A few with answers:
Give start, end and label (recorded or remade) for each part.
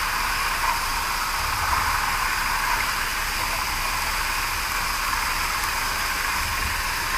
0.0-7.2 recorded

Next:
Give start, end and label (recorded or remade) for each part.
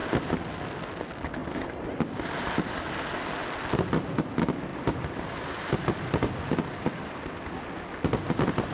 0.0-1.4 recorded; 1.4-3.6 remade; 3.6-4.7 recorded; 4.7-7.2 remade; 7.2-8.7 recorded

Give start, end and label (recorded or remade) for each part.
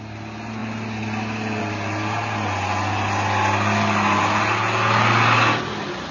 0.0-6.1 recorded